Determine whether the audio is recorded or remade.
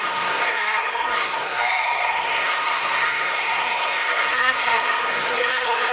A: remade